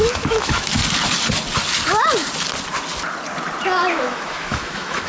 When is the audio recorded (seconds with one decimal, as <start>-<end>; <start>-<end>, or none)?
0.8-3.9